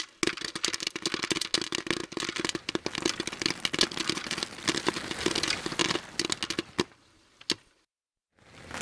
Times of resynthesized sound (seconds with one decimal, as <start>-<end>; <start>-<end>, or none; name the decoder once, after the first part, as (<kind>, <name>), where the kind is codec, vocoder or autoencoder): none